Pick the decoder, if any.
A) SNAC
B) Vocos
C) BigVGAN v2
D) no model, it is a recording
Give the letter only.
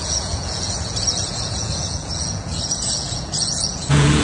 B